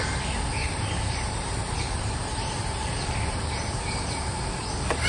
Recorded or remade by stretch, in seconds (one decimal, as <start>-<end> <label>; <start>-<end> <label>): 0.0-0.6 recorded; 0.6-3.7 remade; 3.7-5.1 recorded

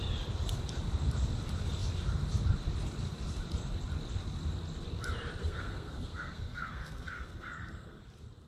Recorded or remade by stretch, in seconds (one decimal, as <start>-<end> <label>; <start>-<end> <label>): 0.0-5.4 recorded; 5.4-8.0 remade; 8.0-8.5 recorded